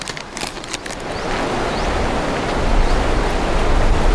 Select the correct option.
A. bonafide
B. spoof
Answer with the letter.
A